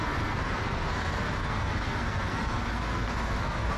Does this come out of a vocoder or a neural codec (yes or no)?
yes